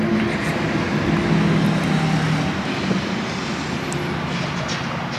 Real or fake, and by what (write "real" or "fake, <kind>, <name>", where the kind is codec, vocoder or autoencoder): real